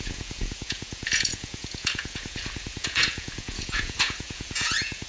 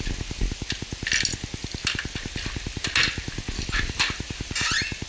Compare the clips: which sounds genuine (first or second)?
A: second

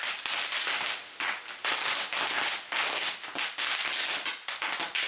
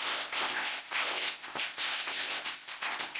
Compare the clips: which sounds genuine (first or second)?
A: first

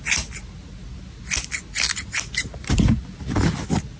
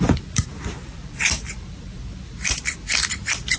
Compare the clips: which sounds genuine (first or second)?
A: first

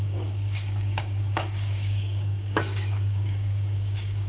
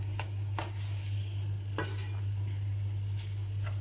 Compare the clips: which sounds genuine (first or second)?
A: second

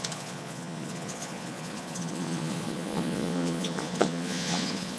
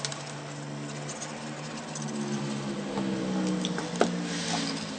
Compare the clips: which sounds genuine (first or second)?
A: second